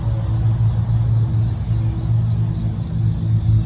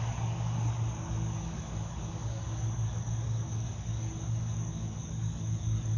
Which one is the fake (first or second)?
second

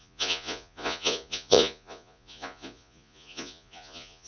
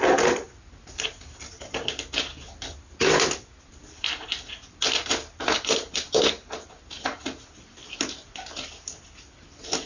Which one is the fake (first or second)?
first